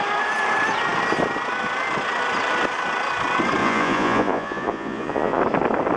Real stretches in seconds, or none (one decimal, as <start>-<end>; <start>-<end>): 0.0-3.6; 5.4-6.0